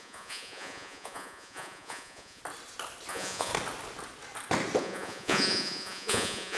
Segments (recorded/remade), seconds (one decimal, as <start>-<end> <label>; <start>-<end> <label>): 0.0-2.4 remade; 2.4-3.1 recorded; 3.1-3.5 remade; 3.5-4.8 recorded; 4.8-6.6 remade